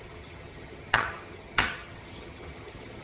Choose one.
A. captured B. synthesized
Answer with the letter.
B